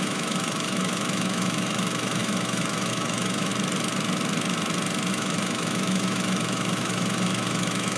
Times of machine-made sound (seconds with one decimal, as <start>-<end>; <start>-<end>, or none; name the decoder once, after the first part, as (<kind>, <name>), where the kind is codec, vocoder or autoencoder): 0.0-3.5 (autoencoder, DAC-VAE); 5.1-8.0